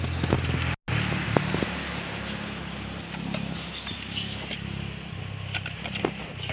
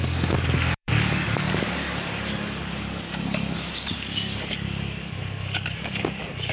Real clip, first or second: first